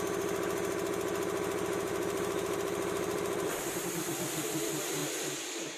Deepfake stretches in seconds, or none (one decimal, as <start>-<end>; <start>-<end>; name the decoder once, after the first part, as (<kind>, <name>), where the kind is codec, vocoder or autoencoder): 1.9-3.6 (vocoder, BigVGAN v2)